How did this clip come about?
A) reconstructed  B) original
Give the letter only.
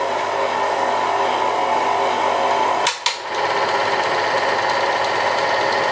B